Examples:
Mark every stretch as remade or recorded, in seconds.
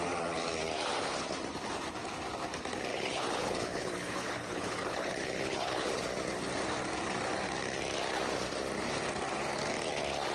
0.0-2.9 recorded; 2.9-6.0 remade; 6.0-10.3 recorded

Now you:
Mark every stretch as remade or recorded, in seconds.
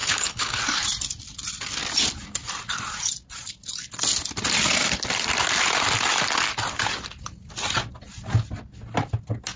0.0-0.6 remade; 0.6-9.6 recorded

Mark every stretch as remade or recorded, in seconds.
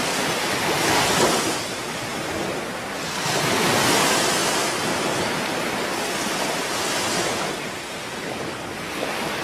0.0-2.1 remade; 2.1-3.3 recorded; 3.3-4.4 remade; 4.4-8.3 recorded; 8.3-9.4 remade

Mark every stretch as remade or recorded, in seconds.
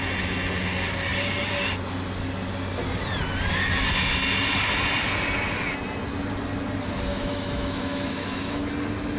0.0-7.1 recorded; 7.1-8.7 remade; 8.7-9.2 recorded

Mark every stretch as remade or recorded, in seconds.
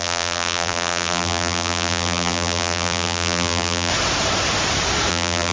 0.0-3.9 remade; 3.9-5.1 recorded; 5.1-5.5 remade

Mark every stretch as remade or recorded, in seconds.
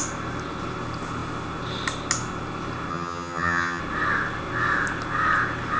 0.0-2.9 recorded; 2.9-3.8 remade; 3.8-5.8 recorded